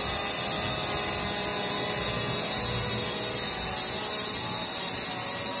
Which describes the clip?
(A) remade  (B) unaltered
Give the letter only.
B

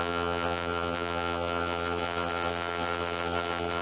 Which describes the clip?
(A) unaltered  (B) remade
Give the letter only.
B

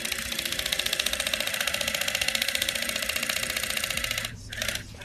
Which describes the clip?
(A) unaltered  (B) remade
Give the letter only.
B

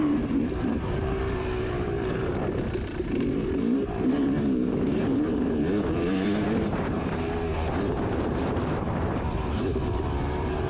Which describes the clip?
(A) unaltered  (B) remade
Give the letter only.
B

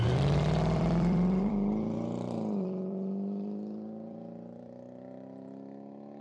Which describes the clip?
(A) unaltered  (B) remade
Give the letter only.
B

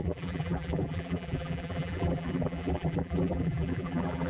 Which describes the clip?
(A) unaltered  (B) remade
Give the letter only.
B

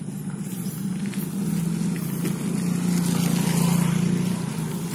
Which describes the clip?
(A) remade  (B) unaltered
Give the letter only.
B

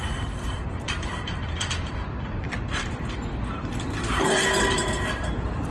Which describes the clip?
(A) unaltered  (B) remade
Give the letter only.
B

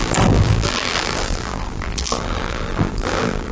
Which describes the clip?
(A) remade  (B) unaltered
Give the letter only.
A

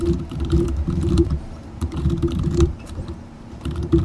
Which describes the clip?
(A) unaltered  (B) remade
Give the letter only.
B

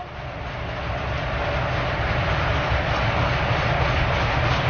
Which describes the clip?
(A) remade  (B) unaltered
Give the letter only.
B